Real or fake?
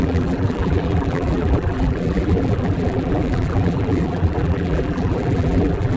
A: fake